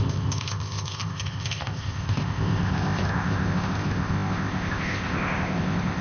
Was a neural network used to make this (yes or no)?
yes